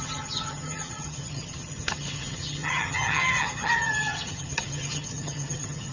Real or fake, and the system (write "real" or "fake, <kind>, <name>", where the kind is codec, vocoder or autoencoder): fake, vocoder, HiFi-GAN